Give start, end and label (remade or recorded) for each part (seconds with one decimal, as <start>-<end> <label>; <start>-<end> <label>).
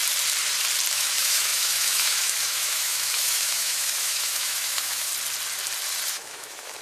0.0-0.9 recorded; 0.9-5.1 remade; 5.1-6.1 recorded; 6.1-6.8 remade